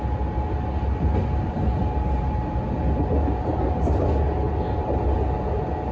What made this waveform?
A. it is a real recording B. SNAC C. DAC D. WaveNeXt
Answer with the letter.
A